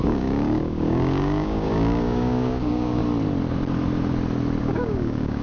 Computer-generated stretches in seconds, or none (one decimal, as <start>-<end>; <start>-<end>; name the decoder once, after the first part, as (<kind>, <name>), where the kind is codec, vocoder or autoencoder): 0.0-3.0 (codec, DAC); 4.6-5.4